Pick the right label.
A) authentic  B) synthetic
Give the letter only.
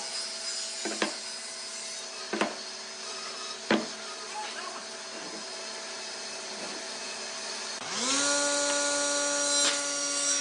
A